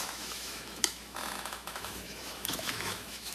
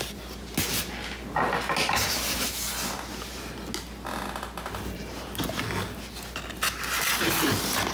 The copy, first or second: first